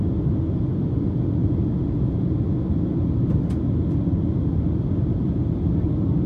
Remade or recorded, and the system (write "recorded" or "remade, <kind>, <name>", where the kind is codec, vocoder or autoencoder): recorded